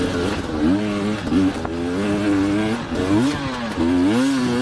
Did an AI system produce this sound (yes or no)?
no